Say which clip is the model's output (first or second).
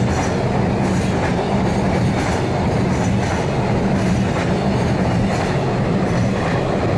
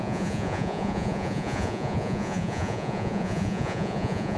second